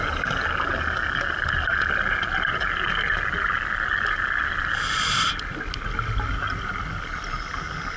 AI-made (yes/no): no